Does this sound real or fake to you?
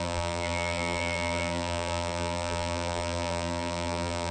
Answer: fake